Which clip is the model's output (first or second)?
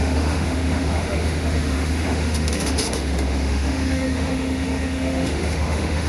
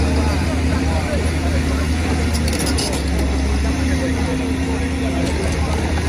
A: first